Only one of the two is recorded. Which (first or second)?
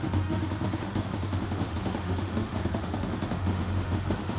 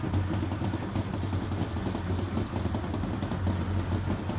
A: second